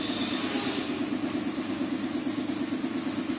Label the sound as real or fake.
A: real